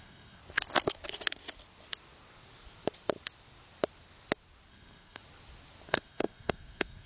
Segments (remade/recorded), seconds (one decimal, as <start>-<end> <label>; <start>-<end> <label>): 0.0-0.4 remade; 0.4-4.7 recorded; 4.7-5.2 remade; 5.2-5.9 recorded; 5.9-7.1 remade